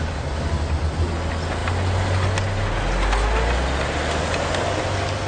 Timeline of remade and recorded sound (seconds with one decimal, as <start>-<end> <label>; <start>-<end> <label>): 0.0-5.3 recorded